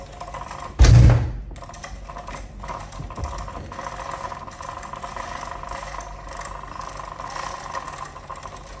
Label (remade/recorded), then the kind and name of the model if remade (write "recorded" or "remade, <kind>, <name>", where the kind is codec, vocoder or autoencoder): recorded